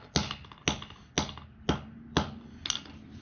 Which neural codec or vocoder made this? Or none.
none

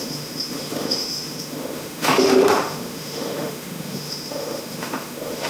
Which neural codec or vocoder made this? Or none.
autoencoder, DAC-VAE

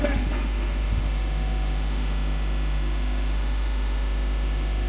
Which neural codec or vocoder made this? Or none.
autoencoder, DAC-VAE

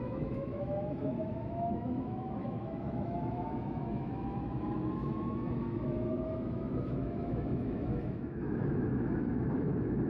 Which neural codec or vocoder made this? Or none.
autoencoder, DAC-VAE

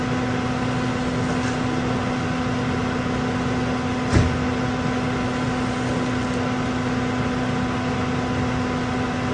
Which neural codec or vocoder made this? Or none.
none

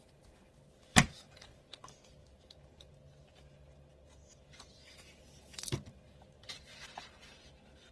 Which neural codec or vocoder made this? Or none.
none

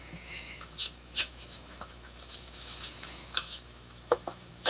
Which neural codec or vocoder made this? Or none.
autoencoder, DAC-VAE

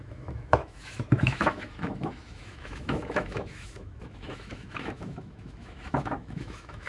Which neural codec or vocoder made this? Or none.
autoencoder, DAC-VAE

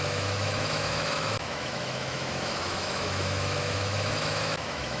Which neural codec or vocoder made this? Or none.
autoencoder, DAC-VAE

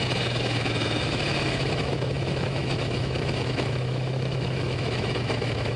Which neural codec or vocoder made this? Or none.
autoencoder, DAC-VAE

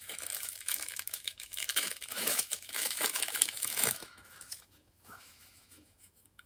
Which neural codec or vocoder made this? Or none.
autoencoder, DAC-VAE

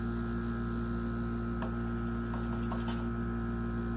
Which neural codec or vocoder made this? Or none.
none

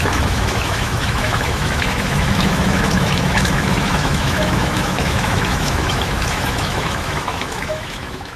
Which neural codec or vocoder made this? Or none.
autoencoder, DAC-VAE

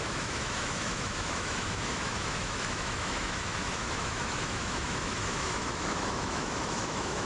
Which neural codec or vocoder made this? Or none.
autoencoder, DAC-VAE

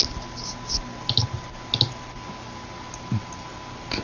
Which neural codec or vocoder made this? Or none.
none